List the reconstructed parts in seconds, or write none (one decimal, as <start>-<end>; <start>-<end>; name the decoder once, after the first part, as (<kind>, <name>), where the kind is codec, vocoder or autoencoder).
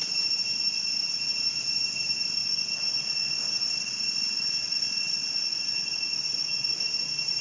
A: 0.0-2.4 (vocoder, BigVGAN v2); 6.8-7.4